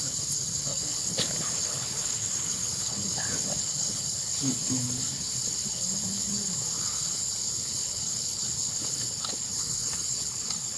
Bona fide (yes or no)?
no